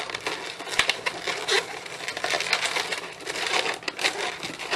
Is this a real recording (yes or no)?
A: yes